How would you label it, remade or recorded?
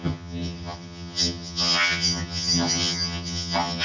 remade